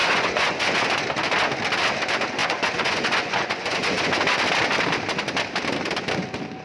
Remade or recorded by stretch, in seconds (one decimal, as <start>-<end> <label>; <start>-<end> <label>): 0.0-0.8 remade; 0.8-2.4 recorded; 2.4-4.1 remade; 4.1-6.6 recorded